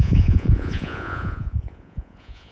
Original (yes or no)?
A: no